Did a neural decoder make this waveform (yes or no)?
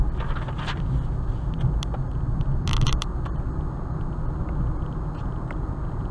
no